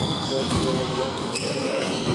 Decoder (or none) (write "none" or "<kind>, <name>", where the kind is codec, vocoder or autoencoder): codec, SNAC